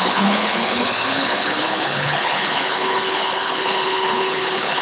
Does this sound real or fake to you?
fake